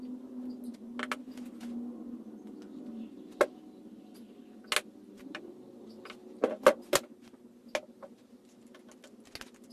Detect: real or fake real